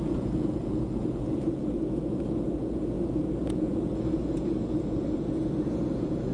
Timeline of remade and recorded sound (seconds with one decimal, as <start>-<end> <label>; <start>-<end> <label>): 0.0-6.3 remade